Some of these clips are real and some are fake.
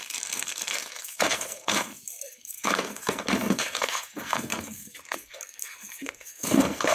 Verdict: fake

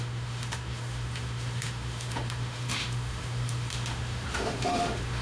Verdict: fake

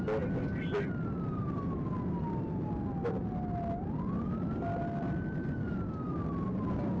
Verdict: real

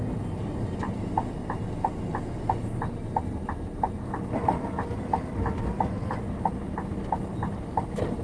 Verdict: real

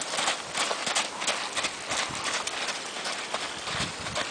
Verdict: real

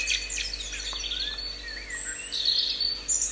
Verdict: real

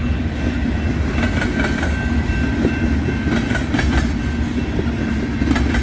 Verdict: real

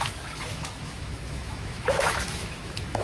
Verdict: fake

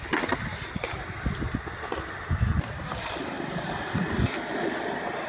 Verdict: real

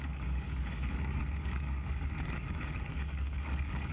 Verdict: fake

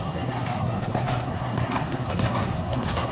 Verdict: fake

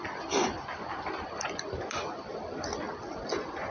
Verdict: real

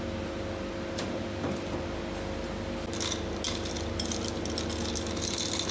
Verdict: real